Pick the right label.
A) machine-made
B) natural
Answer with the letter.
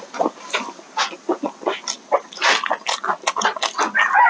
B